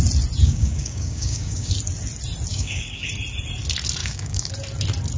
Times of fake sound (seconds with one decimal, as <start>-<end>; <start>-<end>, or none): 0.4-1.7; 2.5-3.1; 4.0-4.5